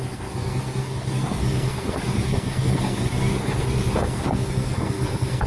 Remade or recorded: remade